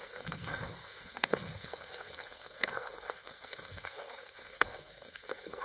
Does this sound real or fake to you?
fake